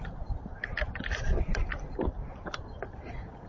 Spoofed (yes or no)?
no